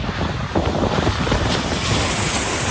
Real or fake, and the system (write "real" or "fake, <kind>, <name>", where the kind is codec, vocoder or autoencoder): real